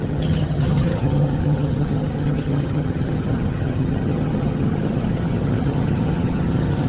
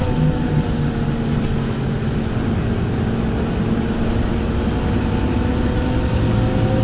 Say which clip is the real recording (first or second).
second